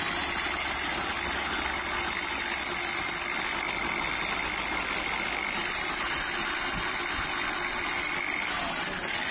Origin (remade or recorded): recorded